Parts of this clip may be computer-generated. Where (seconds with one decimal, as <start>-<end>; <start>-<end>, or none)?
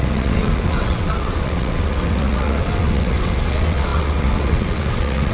0.0-5.3